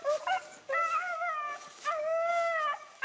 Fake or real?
fake